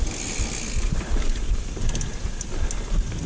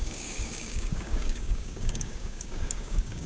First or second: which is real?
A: first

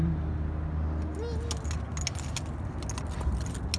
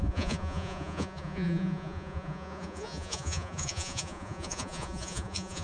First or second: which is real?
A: first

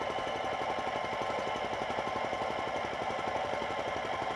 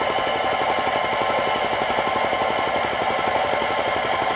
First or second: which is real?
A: second